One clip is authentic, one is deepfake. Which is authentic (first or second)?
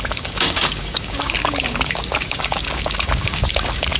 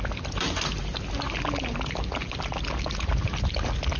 second